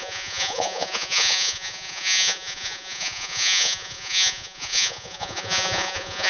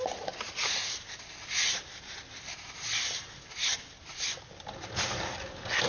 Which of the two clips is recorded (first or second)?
second